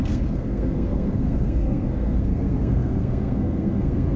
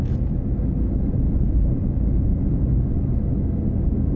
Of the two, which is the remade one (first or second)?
first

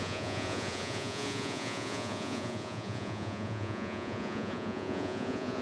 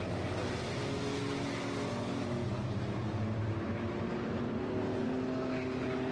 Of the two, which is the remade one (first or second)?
first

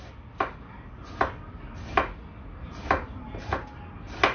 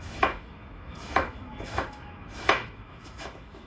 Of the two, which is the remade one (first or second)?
second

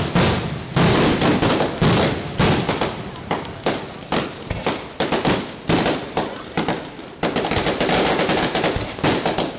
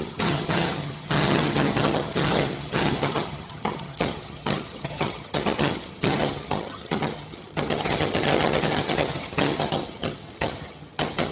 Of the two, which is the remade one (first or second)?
second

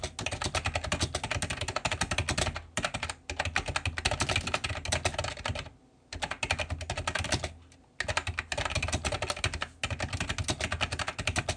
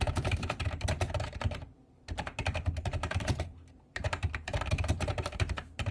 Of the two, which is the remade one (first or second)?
second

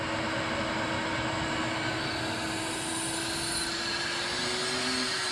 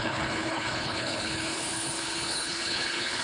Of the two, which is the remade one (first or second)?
second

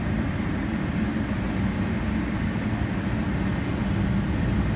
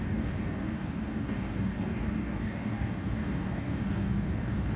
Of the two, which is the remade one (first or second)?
second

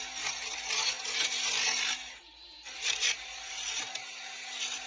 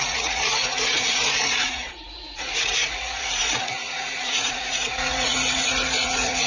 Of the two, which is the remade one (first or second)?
second